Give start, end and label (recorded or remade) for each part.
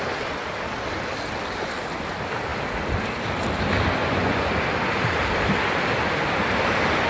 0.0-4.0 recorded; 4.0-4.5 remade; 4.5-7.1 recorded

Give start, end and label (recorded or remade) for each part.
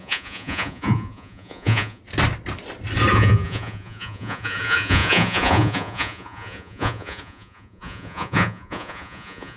0.0-2.0 remade; 2.0-3.1 recorded; 3.1-9.6 remade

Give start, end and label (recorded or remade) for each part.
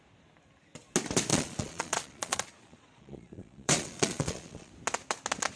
0.0-1.3 recorded; 1.3-4.7 remade; 4.7-5.6 recorded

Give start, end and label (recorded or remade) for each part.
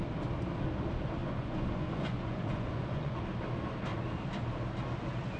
0.0-1.2 recorded; 1.2-3.2 remade; 3.2-5.4 recorded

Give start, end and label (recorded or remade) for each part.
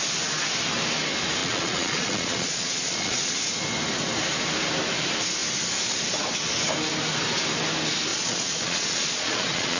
0.0-1.4 recorded; 1.4-3.4 remade; 3.4-8.1 recorded; 8.1-9.8 remade